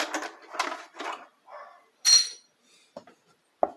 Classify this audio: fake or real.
real